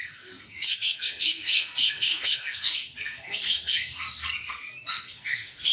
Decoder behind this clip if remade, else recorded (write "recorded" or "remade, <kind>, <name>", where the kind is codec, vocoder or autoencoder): remade, codec, SNAC